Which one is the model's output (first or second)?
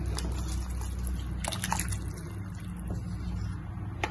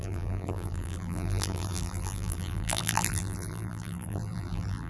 second